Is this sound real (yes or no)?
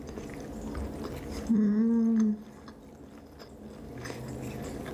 yes